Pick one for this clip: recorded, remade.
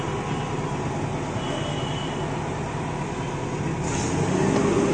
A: recorded